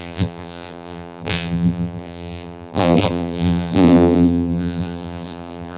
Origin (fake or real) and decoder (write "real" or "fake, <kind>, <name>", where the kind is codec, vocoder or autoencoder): fake, vocoder, BigVGAN v2